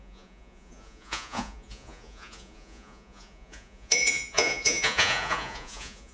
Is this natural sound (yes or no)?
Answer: no